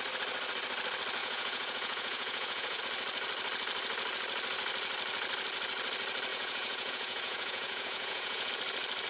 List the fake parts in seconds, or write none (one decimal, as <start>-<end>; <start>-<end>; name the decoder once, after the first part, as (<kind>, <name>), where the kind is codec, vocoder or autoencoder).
1.2-2.8 (vocoder, Vocos); 6.3-8.5